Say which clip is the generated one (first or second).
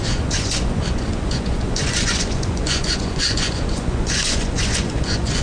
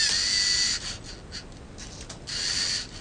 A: first